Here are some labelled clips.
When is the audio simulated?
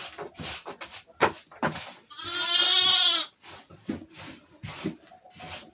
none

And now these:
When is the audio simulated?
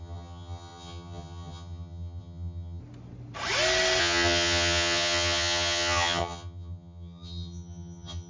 0.0-2.8 (vocoder, HiFi-GAN); 4.0-8.3